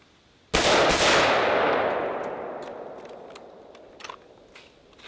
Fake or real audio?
real